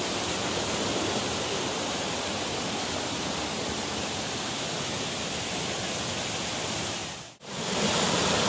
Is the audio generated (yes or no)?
no